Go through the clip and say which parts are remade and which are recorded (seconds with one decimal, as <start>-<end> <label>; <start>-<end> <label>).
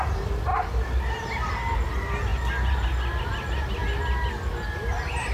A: 0.0-5.3 recorded